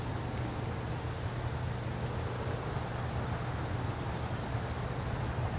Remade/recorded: recorded